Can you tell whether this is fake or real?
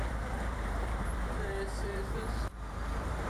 fake